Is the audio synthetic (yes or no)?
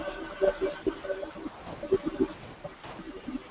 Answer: no